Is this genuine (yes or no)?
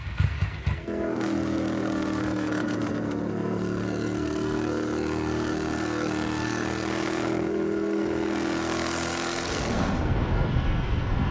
no